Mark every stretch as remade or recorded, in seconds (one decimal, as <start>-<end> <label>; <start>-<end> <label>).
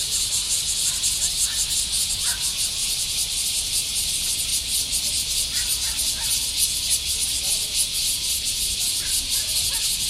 0.0-2.8 recorded; 2.8-4.1 remade; 4.1-10.1 recorded